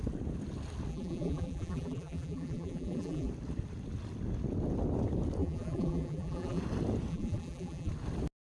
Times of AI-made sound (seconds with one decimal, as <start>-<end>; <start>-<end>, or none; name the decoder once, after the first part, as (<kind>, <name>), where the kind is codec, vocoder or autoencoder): 0.9-3.3 (vocoder, BigVGAN v2); 5.4-6.6; 7.1-7.9